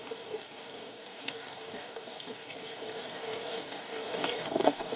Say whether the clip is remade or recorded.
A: remade